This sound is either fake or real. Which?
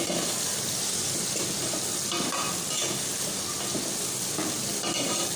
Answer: real